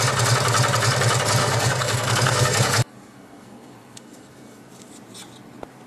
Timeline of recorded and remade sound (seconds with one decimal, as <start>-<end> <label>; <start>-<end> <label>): 0.0-1.4 recorded; 1.4-4.9 remade; 4.9-5.9 recorded